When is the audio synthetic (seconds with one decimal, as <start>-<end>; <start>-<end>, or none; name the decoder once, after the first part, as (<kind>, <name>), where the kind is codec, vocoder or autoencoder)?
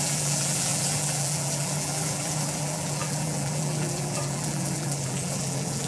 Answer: 0.0-5.9 (vocoder, BigVGAN v2)